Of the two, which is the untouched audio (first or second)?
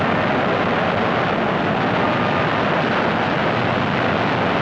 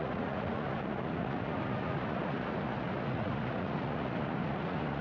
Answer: first